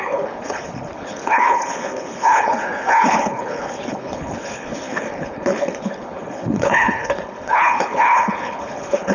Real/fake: fake